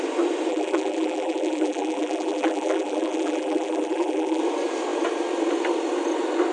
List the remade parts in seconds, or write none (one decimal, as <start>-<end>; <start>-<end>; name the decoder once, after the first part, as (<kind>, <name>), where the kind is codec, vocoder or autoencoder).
0.5-4.4 (vocoder, BigVGAN v2)